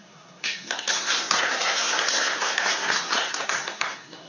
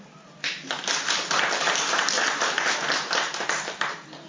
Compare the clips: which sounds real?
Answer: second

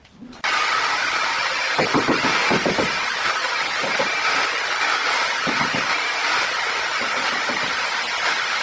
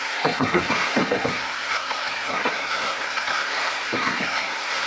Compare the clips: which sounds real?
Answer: first